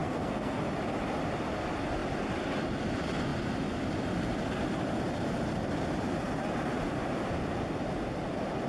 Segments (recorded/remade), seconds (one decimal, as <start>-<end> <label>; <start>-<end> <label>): 0.0-0.6 remade; 0.6-8.7 recorded